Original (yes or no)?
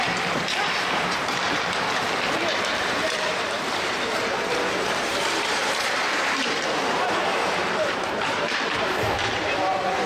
no